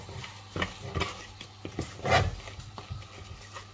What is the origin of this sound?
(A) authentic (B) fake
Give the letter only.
A